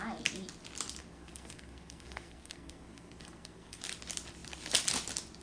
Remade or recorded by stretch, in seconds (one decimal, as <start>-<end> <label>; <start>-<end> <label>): 0.0-1.0 recorded; 1.0-3.8 remade; 3.8-5.4 recorded